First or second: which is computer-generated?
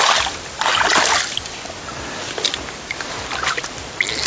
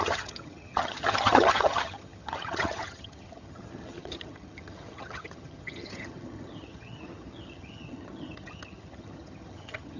second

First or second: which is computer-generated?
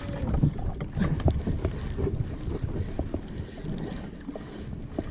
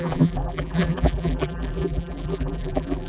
second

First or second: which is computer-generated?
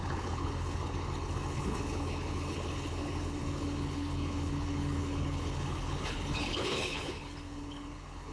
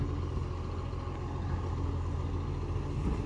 first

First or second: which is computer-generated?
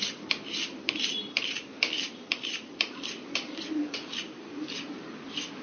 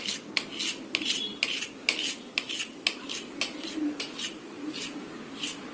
first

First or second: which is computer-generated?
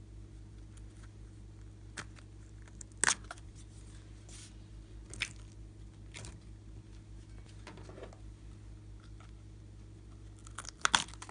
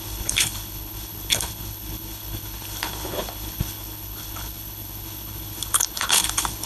second